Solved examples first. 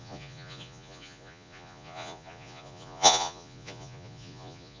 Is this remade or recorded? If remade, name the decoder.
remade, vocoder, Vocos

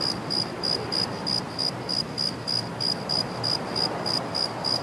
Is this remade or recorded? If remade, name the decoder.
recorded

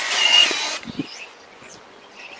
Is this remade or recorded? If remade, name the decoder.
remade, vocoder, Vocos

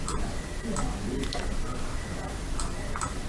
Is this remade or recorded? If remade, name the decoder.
recorded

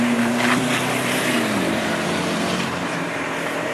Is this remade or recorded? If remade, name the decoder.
remade, vocoder, BigVGAN v2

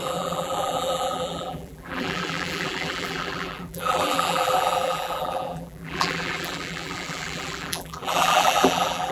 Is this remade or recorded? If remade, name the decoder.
remade, vocoder, BigVGAN v2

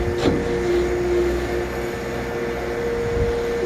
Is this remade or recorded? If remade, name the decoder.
recorded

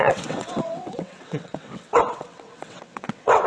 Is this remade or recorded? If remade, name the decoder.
remade, vocoder, WaveNeXt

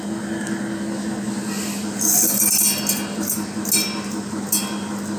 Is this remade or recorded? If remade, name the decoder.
recorded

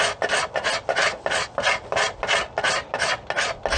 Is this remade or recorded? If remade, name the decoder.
recorded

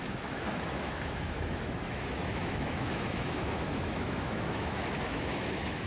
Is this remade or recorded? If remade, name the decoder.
remade, autoencoder, DAC-VAE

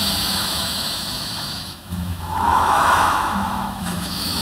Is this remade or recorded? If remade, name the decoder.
remade, autoencoder, DAC-VAE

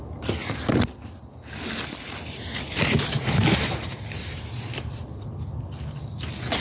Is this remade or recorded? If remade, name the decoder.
recorded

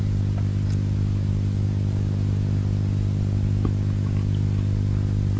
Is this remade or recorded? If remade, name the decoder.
recorded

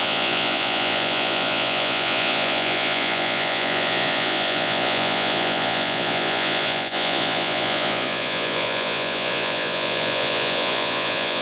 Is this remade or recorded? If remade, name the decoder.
remade, vocoder, Vocos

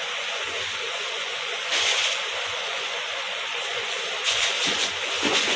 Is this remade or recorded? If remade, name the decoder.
remade, vocoder, Vocos